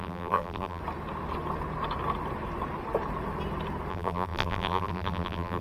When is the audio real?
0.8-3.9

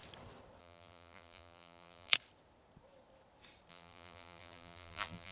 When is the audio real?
0.0-0.6; 2.1-3.7

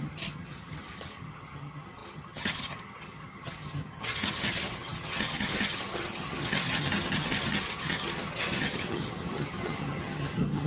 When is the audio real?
none

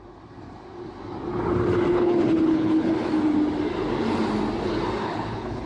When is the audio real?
0.0-1.9; 2.9-5.0

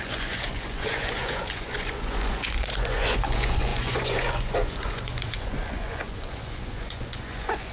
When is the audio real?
none